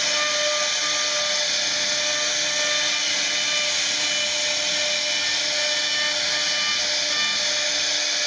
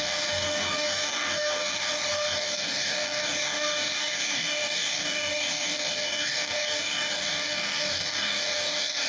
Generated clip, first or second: second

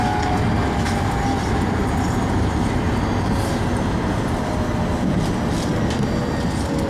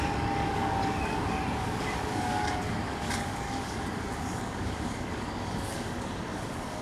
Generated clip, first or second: second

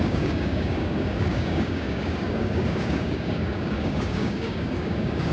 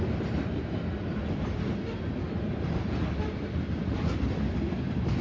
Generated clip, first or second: first